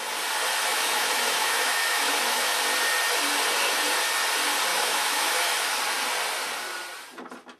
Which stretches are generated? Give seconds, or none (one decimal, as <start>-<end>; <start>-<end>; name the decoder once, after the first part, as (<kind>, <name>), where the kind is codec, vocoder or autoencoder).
0.7-2.6 (autoencoder, DAC-VAE); 4.7-5.8